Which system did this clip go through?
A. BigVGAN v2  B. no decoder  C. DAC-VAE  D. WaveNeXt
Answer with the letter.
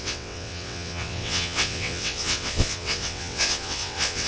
D